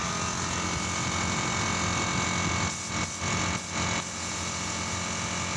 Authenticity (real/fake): real